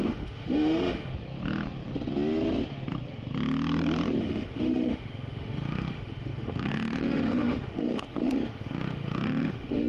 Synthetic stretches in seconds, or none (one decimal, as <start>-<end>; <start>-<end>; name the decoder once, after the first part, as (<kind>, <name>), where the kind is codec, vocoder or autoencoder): 0.0-1.1 (autoencoder, DAC-VAE); 4.2-9.9